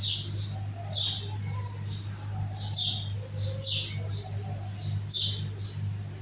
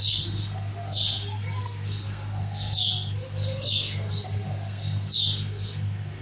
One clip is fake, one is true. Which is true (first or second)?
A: first